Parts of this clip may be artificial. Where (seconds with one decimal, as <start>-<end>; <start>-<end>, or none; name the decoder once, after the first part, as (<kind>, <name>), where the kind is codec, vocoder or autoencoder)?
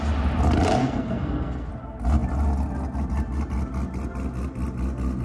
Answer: 0.8-1.7 (codec, SNAC)